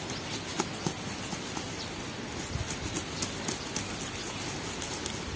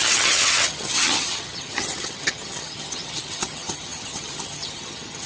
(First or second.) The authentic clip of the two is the first